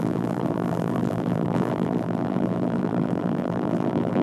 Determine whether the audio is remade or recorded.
remade